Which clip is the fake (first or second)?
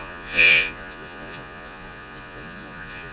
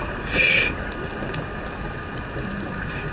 first